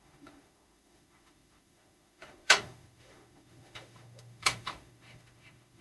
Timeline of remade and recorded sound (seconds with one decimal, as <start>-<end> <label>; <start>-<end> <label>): 0.0-5.8 remade